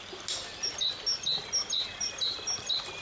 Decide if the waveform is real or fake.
real